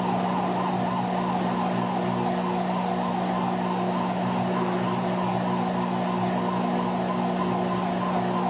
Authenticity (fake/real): real